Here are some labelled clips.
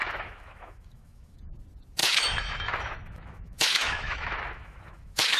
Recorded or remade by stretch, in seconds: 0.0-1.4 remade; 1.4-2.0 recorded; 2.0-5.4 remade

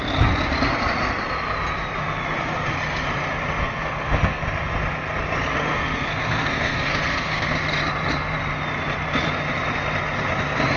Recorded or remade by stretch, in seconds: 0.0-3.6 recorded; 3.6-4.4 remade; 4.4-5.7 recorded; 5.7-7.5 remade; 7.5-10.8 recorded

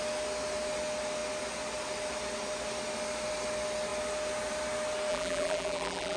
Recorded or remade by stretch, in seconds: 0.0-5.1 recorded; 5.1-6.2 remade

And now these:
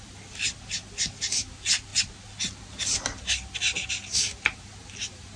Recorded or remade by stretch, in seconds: 0.0-5.4 recorded

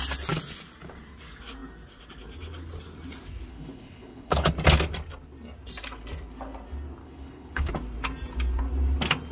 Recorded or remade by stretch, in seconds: 0.0-3.5 recorded; 3.5-4.5 remade; 4.5-7.0 recorded; 7.0-7.7 remade; 7.7-9.3 recorded